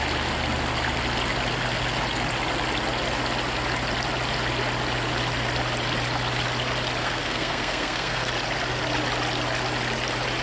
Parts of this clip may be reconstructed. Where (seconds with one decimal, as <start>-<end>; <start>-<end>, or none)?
7.0-8.3